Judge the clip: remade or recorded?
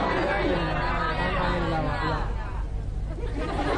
recorded